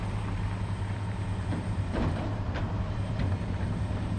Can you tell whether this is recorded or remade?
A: remade